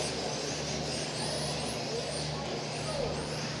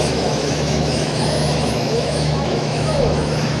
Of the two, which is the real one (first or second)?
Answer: first